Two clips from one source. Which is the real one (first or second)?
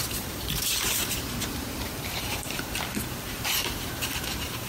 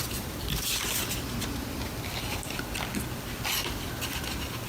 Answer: second